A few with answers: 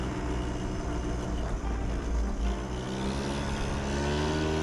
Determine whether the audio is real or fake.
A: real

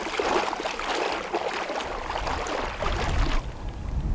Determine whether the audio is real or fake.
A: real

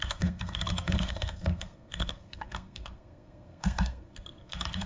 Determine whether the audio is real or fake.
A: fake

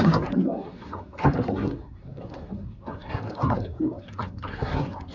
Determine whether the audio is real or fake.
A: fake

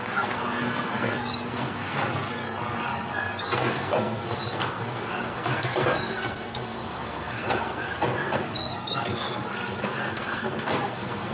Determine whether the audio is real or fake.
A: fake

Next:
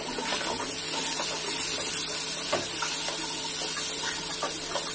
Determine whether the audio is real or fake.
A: real